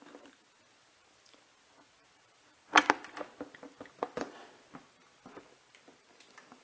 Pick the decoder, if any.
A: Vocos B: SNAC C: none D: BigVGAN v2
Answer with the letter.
C